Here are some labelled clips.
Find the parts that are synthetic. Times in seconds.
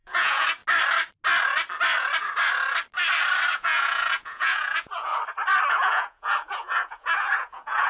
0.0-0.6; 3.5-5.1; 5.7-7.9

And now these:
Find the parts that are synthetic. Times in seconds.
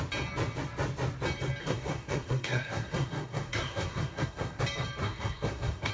1.6-4.6; 5.0-5.9